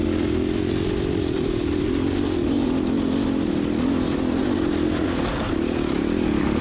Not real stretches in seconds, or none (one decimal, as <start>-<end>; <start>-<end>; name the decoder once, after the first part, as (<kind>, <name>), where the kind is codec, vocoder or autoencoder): 0.0-1.8 (vocoder, BigVGAN v2)